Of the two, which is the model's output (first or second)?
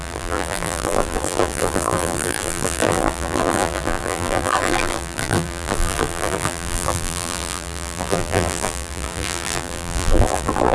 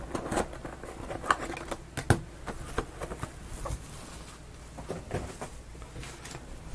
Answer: first